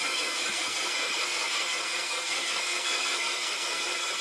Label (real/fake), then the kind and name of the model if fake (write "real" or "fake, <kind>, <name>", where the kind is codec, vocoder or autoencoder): fake, codec, SNAC